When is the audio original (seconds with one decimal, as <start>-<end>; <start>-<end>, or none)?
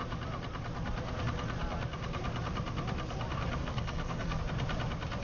0.0-3.6; 4.4-5.2